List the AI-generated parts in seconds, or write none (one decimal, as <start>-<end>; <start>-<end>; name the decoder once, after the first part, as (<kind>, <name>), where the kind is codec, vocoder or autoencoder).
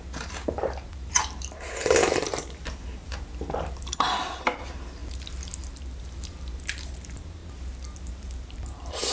0.0-5.0 (vocoder, BigVGAN v2); 6.0-7.4; 8.1-9.1